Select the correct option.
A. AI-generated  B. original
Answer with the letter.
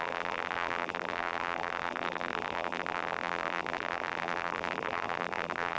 A